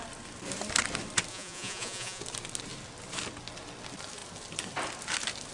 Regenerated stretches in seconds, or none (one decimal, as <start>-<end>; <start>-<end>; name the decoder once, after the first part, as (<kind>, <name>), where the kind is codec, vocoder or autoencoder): 1.3-2.2 (vocoder, Vocos)